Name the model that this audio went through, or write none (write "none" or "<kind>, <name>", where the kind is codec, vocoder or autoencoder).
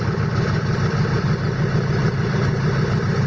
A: none